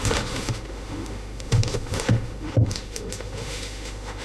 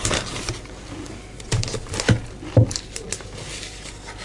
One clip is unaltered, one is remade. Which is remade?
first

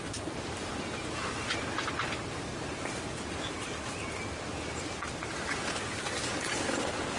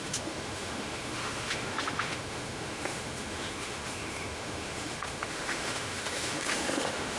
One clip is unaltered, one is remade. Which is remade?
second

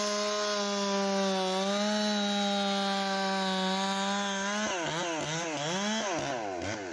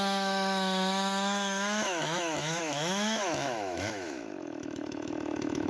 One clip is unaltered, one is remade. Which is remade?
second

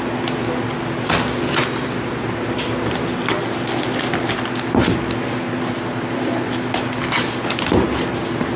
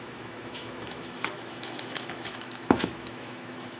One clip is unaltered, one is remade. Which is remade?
second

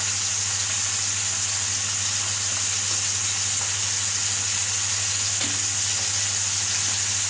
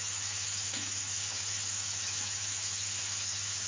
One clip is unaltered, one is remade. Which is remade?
second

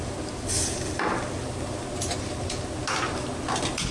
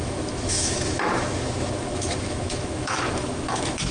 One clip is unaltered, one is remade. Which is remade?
second